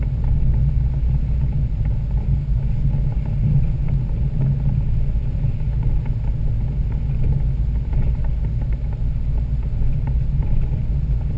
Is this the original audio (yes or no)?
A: yes